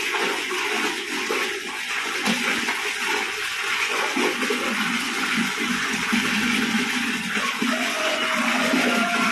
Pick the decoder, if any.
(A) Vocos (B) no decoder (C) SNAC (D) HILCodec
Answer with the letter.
A